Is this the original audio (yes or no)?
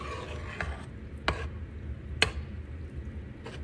yes